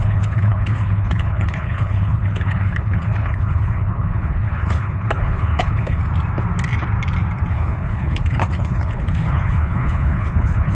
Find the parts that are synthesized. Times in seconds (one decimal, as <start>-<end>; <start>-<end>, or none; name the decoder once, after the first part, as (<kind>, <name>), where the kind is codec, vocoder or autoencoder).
0.0-6.0 (codec, HILCodec); 7.5-10.7